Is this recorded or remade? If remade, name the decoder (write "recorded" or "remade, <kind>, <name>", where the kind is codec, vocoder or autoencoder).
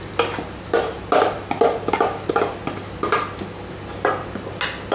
recorded